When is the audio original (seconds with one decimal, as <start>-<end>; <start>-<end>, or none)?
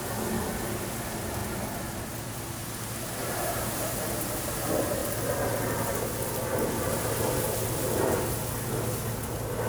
0.0-3.2; 3.8-9.7